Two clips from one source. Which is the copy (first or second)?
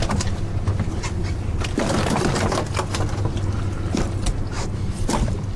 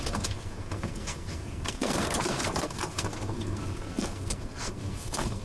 second